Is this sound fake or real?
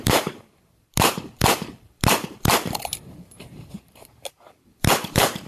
fake